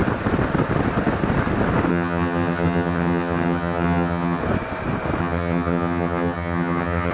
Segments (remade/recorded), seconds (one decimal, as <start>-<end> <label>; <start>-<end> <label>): 0.0-1.9 recorded; 1.9-4.4 remade; 4.4-5.2 recorded; 5.2-7.1 remade